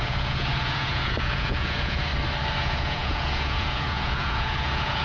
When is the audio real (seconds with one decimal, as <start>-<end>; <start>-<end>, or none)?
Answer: 2.1-2.6